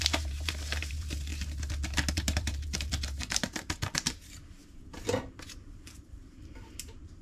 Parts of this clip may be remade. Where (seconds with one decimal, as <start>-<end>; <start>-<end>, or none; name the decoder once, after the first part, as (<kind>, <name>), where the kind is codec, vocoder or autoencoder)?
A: 0.0-1.3 (vocoder, BigVGAN v2); 2.1-4.6; 5.2-7.2